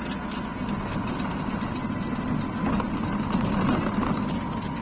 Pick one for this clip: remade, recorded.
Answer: recorded